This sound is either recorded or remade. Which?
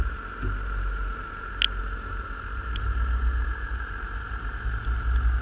recorded